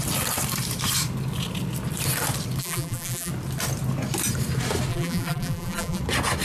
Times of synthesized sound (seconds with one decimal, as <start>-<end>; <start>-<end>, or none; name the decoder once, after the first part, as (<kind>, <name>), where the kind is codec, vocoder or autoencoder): 2.6-3.3 (vocoder, BigVGAN v2); 4.9-6.0